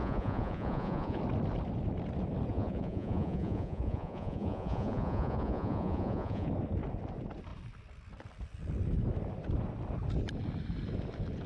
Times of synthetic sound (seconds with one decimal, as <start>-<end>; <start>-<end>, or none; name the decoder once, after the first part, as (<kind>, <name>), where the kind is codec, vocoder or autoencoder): 0.0-1.2 (vocoder, Vocos); 2.5-6.5